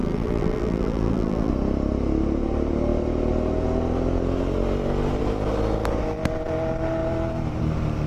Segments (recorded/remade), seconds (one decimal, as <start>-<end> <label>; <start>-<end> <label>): 0.0-1.5 remade; 1.5-8.1 recorded